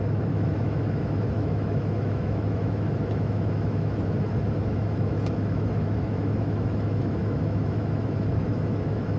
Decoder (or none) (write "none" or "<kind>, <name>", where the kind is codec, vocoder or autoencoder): autoencoder, DAC-VAE